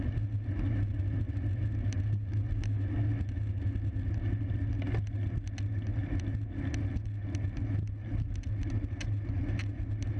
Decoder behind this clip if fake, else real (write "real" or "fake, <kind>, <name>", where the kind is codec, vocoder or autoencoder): real